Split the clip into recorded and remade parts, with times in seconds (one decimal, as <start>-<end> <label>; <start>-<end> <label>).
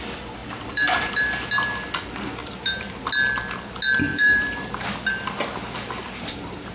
0.0-0.4 recorded; 0.4-1.3 remade; 1.3-2.4 recorded; 2.4-3.0 remade; 3.0-4.1 recorded; 4.1-4.7 remade; 4.7-6.7 recorded